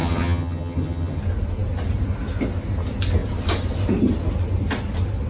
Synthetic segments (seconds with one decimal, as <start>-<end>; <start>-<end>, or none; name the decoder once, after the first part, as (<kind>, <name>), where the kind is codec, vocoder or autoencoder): 0.0-1.2 (vocoder, HiFi-GAN)